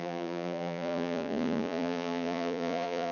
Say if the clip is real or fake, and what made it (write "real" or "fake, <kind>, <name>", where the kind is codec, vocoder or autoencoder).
fake, vocoder, Vocos